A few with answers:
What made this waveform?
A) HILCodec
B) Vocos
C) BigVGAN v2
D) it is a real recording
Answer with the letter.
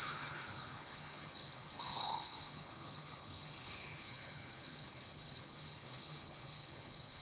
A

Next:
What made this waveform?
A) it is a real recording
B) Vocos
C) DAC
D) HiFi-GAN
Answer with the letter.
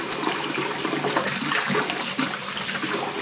A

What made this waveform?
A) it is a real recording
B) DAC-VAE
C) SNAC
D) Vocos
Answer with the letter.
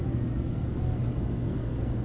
C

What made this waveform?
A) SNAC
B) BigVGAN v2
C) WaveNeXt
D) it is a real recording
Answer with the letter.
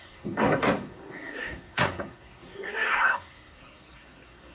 A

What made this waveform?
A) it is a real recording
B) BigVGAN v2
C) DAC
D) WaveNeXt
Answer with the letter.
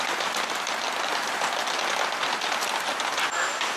A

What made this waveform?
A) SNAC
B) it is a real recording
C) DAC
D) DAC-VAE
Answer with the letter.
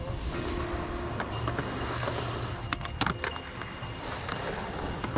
B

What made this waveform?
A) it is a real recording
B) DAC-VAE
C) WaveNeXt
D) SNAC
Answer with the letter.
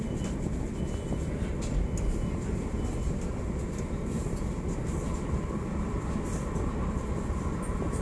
A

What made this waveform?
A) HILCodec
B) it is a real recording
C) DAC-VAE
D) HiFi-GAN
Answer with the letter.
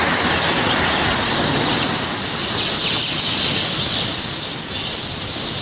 B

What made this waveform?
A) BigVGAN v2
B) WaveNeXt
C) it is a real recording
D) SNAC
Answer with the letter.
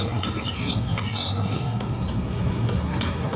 D